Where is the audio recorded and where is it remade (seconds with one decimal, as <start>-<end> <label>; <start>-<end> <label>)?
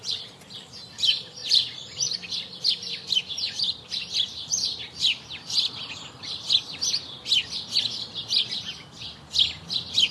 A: 0.0-10.1 recorded